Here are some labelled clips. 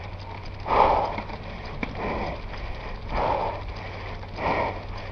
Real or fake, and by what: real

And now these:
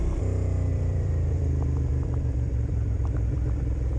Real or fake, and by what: fake, vocoder, BigVGAN v2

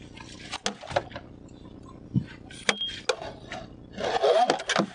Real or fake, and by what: real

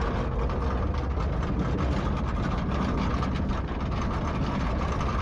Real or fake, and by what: real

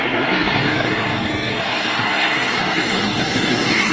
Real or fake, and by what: fake, codec, SNAC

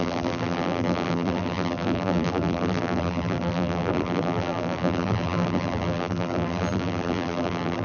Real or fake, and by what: fake, vocoder, BigVGAN v2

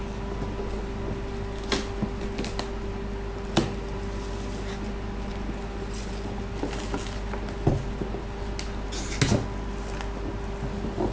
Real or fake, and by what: real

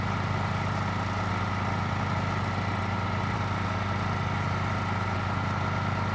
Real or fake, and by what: real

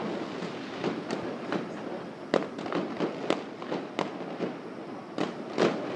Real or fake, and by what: real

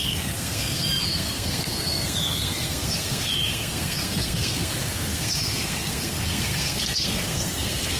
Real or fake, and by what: fake, codec, SNAC